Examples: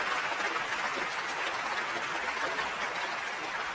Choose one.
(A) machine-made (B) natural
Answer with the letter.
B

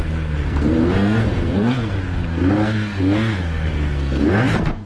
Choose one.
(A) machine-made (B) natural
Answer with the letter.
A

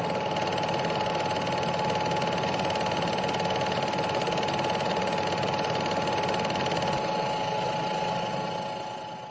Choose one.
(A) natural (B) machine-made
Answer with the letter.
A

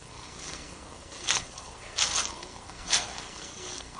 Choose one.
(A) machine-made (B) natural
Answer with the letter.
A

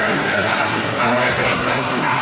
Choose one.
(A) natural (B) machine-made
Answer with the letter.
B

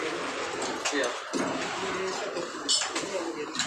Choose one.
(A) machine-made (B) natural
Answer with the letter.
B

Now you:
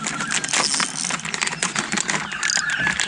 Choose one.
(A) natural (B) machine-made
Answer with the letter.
A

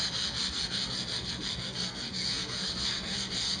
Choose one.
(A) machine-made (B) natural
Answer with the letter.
A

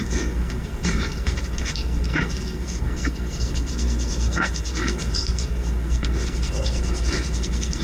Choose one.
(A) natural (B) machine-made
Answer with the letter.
B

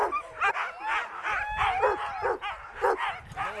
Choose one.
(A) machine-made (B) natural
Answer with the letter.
B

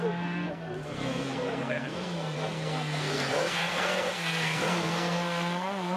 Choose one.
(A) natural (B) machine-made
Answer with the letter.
B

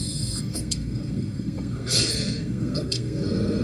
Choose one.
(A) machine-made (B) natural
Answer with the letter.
A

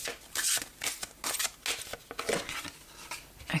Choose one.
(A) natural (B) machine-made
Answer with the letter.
A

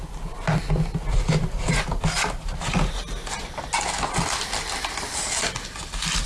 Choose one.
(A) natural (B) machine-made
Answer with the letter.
A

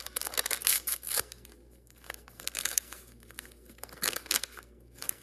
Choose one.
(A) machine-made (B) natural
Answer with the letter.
A